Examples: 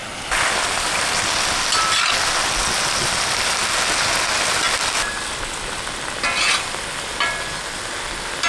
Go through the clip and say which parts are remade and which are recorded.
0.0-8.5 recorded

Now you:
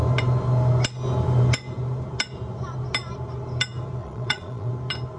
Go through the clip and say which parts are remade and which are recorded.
0.0-4.0 recorded; 4.0-4.7 remade; 4.7-5.2 recorded

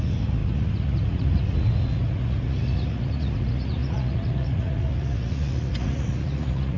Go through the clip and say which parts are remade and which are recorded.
0.0-6.8 remade